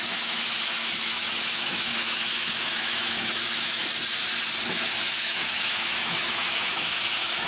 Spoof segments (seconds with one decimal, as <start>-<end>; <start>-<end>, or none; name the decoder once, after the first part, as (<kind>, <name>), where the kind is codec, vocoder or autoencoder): 0.0-3.8 (autoencoder, DAC-VAE); 4.7-7.5